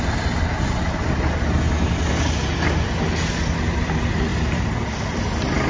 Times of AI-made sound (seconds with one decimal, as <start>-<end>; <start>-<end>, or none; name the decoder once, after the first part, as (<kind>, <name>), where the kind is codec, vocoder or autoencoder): none